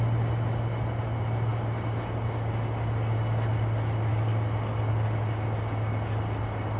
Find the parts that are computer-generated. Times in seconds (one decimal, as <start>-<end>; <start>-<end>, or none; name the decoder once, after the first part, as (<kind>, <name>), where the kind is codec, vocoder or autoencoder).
none